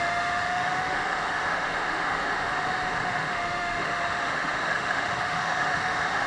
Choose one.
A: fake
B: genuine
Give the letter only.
A